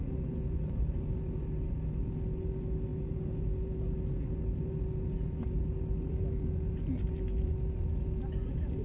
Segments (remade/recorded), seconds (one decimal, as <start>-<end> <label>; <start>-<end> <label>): 0.0-8.8 recorded